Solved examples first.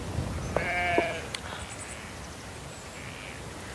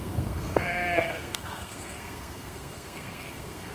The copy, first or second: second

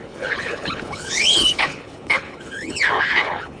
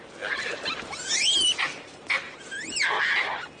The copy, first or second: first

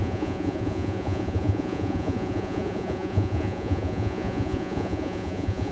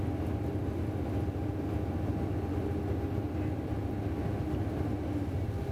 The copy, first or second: first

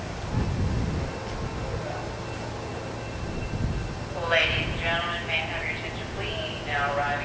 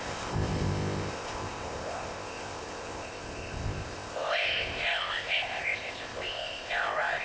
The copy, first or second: second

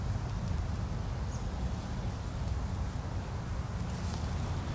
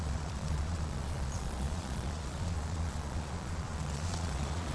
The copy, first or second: second